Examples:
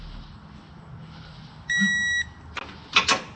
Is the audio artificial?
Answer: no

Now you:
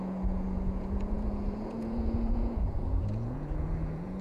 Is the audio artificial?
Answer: yes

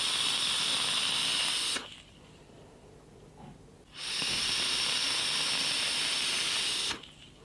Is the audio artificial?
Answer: no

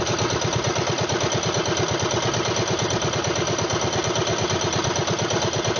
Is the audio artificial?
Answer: no